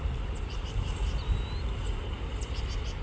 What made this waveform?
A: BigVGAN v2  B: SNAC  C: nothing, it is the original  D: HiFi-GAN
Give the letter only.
C